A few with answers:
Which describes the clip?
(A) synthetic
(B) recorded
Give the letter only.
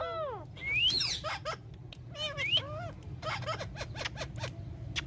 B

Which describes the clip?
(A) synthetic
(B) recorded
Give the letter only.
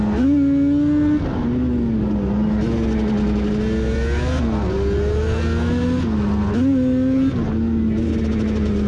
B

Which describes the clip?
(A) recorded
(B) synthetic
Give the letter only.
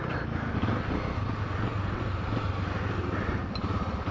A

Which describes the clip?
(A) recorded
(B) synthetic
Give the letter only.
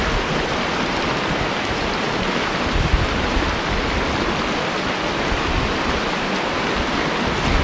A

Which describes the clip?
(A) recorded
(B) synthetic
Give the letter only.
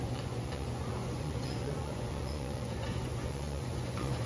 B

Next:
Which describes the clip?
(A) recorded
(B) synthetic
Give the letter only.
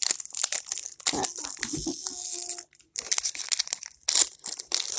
A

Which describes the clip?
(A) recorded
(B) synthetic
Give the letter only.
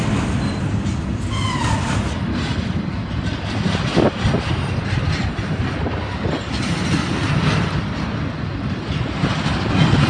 A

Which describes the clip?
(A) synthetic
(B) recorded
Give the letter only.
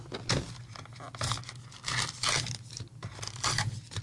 B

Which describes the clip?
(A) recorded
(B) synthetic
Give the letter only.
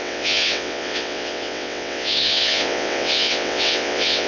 B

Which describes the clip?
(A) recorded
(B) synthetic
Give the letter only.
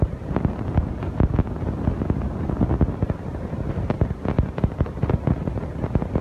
A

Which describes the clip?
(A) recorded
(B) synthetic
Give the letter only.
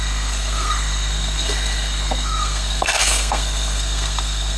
B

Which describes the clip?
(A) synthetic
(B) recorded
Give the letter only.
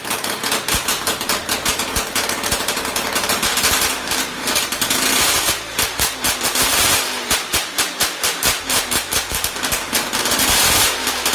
A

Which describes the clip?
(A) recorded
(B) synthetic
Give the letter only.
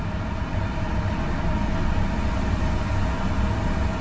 A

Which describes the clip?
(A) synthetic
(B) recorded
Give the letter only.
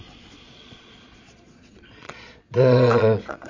A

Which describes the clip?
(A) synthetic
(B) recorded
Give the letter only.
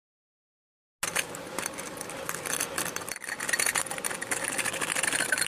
B